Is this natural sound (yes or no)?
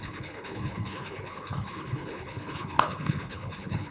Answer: no